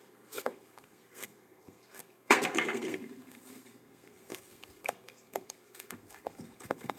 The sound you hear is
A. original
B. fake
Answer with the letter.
B